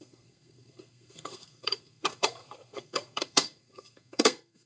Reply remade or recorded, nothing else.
remade